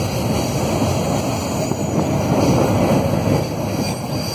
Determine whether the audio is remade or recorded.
recorded